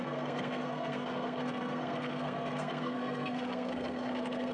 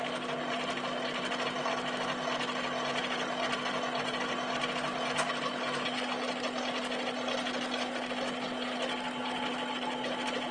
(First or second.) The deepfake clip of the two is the first